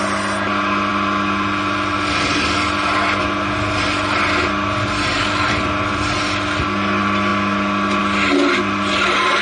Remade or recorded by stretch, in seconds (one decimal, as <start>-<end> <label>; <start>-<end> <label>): 0.0-9.4 recorded